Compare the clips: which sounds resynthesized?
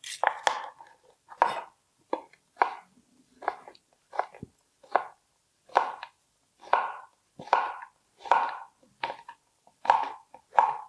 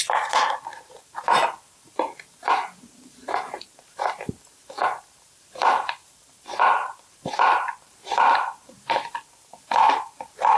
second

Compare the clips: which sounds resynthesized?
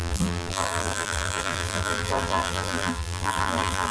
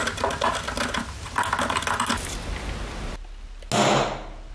first